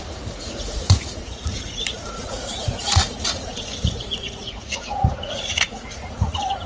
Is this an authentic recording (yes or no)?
no